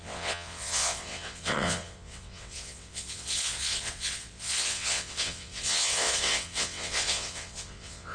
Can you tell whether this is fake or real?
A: fake